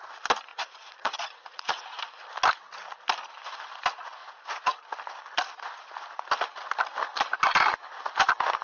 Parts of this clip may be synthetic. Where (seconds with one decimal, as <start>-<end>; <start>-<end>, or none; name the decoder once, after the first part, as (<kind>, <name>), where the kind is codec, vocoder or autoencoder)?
0.5-2.0 (vocoder, Vocos); 4.2-4.8

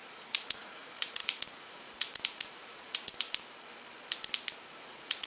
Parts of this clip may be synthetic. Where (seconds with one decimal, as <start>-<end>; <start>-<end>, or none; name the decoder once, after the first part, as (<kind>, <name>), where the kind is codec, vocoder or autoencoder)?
0.0-3.1 (vocoder, Vocos); 4.8-5.3

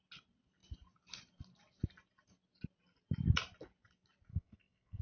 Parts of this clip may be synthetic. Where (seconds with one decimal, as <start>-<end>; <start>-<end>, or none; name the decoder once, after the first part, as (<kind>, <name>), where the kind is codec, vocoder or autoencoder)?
4.3-5.0 (codec, SNAC)

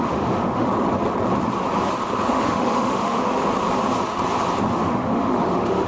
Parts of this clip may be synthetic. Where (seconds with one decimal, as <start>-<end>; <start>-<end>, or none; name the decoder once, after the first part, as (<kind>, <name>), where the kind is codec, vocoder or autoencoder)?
0.0-0.7 (autoencoder, DAC-VAE); 2.3-3.4; 4.7-5.9

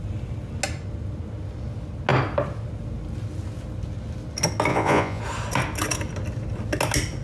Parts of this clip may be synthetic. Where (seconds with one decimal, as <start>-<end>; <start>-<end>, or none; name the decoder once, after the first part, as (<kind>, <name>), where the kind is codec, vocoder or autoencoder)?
4.7-5.2 (vocoder, Vocos)

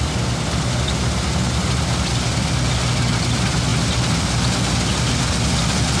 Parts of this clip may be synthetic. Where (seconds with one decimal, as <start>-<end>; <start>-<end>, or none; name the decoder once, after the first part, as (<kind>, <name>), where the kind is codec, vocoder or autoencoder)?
none